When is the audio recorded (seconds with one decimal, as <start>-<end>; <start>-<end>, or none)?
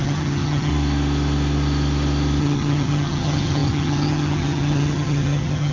0.7-2.4